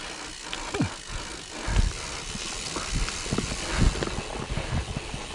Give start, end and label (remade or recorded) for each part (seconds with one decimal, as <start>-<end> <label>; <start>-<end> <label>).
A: 0.0-5.3 recorded